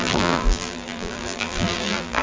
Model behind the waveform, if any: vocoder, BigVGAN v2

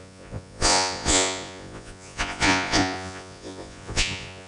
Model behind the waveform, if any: vocoder, Vocos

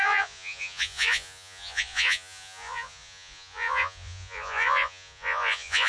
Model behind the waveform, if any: vocoder, Vocos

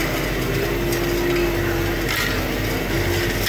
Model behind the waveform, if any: none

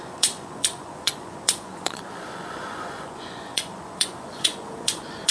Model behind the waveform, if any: vocoder, Vocos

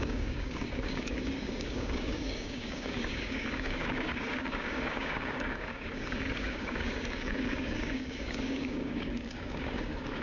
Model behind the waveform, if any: codec, DAC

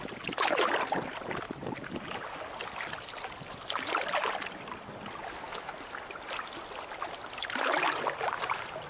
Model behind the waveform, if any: none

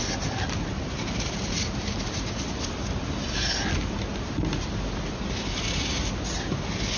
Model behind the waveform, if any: none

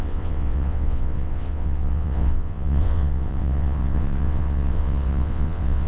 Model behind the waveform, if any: vocoder, WaveNeXt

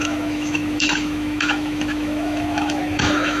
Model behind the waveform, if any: autoencoder, DAC-VAE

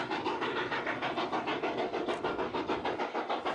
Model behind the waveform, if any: none